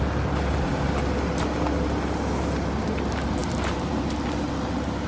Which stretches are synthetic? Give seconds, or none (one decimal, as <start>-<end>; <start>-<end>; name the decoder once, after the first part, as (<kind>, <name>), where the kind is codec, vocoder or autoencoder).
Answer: 3.4-4.0 (vocoder, BigVGAN v2)